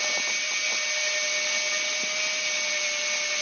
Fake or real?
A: real